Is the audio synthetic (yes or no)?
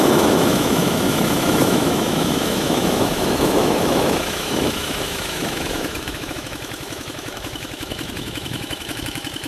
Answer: yes